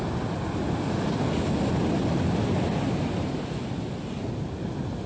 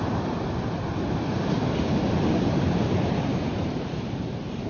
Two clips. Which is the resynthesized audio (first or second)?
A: second